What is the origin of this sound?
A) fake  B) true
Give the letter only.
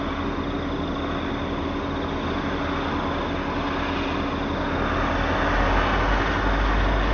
B